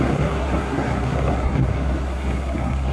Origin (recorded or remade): remade